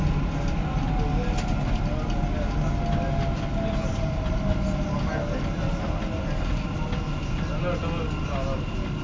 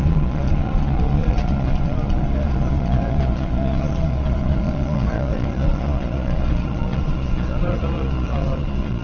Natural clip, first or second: first